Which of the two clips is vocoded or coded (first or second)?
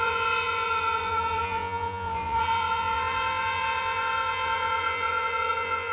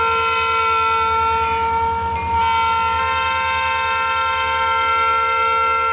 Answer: first